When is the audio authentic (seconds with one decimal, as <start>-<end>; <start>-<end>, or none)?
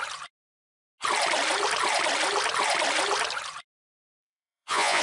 0.0-4.2